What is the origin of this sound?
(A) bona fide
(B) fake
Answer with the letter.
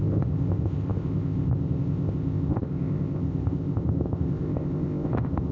B